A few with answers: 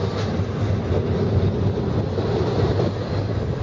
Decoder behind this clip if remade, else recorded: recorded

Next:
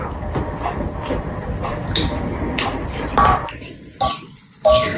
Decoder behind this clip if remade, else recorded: remade, vocoder, BigVGAN v2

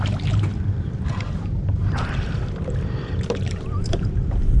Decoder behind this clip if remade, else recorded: remade, vocoder, BigVGAN v2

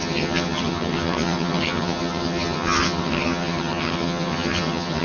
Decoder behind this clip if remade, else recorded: remade, vocoder, HiFi-GAN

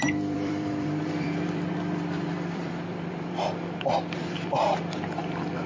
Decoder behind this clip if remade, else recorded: remade, vocoder, BigVGAN v2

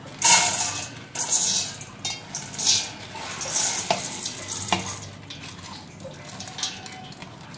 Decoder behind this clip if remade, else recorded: recorded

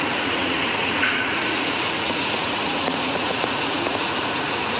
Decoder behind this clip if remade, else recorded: remade, vocoder, Vocos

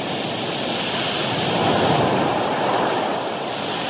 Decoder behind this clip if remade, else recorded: recorded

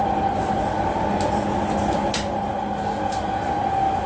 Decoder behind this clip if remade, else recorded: recorded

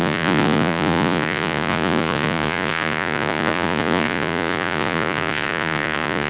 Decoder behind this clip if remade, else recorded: remade, vocoder, Vocos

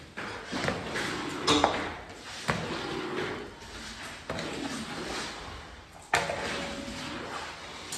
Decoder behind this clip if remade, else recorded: recorded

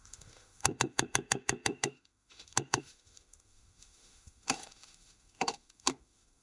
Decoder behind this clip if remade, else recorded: remade, autoencoder, DAC-VAE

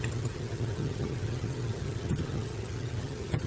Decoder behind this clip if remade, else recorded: remade, vocoder, HiFi-GAN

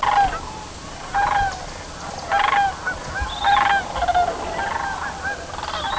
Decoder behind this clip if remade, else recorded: recorded